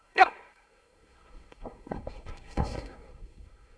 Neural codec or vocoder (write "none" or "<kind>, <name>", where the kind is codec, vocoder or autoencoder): codec, SNAC